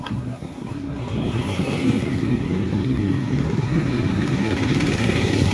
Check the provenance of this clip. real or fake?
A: fake